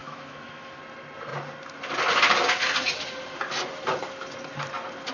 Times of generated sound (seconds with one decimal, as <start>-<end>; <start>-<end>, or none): 0.0-0.8